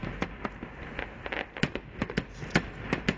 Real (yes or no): yes